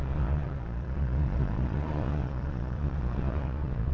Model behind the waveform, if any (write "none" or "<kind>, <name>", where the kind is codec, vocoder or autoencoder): vocoder, Vocos